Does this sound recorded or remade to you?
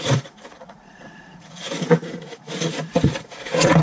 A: remade